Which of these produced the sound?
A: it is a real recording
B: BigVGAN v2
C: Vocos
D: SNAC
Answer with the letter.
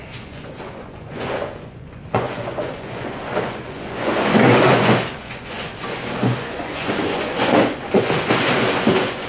C